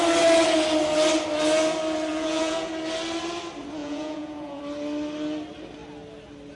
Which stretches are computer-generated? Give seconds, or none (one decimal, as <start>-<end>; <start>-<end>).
2.1-2.7; 3.8-4.6

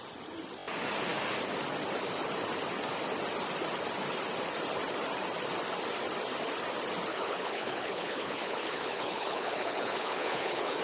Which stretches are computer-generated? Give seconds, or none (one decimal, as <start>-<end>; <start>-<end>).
7.1-10.8

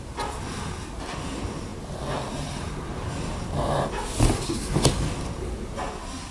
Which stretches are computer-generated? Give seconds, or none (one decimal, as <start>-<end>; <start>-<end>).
none